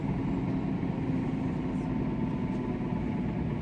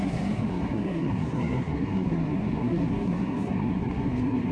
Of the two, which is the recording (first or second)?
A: first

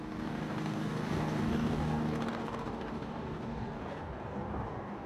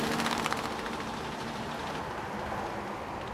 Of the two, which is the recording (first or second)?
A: second